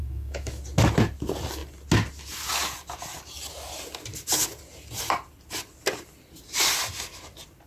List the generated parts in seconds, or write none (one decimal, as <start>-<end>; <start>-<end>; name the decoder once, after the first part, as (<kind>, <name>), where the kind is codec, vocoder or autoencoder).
0.0-0.6 (autoencoder, DAC-VAE)